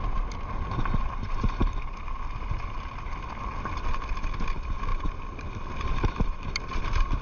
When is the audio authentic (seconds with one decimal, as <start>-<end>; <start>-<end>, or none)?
0.0-1.6; 2.5-4.9